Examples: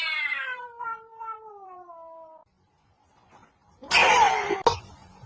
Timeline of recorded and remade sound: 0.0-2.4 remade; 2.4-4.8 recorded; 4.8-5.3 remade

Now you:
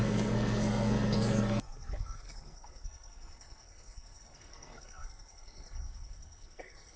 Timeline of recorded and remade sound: 0.0-7.0 remade